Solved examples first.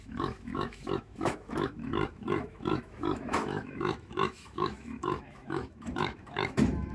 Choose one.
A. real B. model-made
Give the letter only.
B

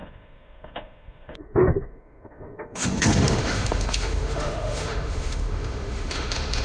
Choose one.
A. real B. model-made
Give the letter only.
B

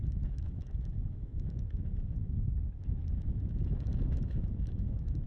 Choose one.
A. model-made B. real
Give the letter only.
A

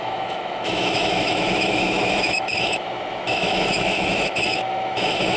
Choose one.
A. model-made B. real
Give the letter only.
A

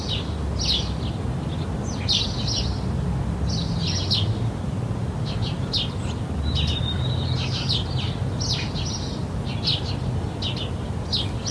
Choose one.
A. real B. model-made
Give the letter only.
A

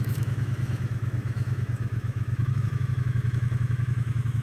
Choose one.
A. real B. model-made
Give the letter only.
B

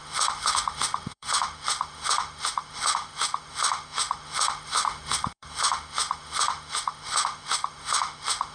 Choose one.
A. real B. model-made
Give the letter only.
B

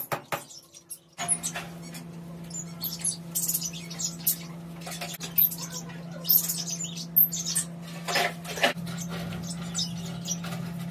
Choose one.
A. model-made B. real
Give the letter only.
B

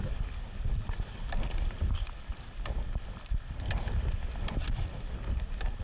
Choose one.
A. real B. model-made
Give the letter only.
A